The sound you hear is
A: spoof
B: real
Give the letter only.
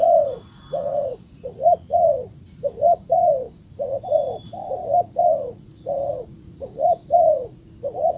A